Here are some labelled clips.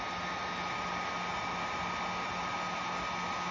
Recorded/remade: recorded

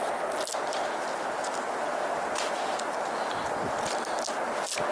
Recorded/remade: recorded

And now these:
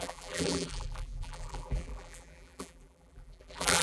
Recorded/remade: remade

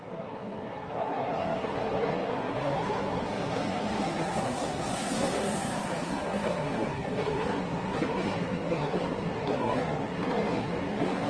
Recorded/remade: remade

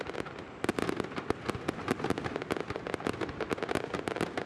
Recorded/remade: recorded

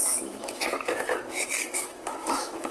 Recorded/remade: remade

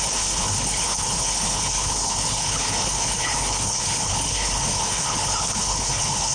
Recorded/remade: remade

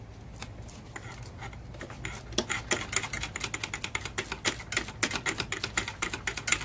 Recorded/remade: recorded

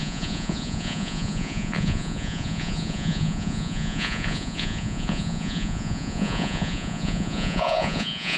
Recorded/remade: remade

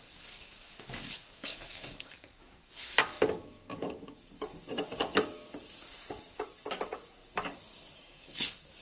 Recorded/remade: remade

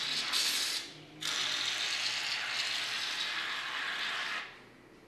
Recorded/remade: recorded